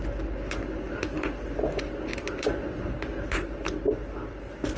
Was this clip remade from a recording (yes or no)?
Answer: no